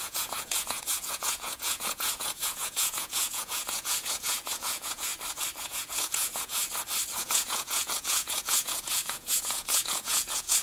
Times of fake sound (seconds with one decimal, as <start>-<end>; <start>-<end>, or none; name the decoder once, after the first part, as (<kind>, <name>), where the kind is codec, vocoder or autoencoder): 0.0-5.1 (vocoder, Vocos); 5.6-6.6; 7.2-10.6